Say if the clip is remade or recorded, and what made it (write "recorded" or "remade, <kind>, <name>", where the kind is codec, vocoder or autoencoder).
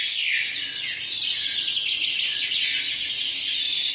recorded